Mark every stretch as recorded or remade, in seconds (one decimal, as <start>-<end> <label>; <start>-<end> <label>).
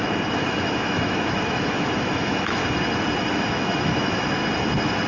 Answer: 0.0-2.6 remade; 2.6-3.3 recorded; 3.3-4.4 remade; 4.4-5.1 recorded